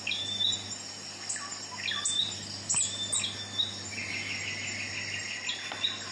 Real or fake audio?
real